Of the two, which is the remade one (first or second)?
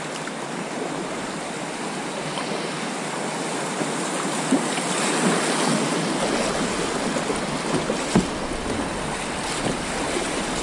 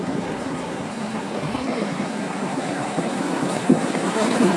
second